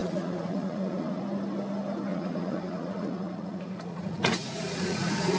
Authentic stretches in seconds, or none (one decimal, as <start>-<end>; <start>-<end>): 1.2-2.1